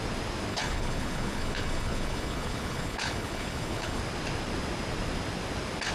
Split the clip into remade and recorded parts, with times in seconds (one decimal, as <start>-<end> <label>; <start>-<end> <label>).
0.0-0.5 recorded; 0.5-4.0 remade; 4.0-5.9 recorded